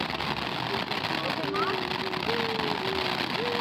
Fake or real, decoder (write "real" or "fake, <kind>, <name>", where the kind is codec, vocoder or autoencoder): real